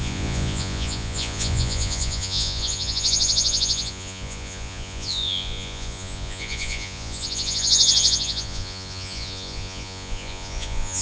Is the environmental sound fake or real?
fake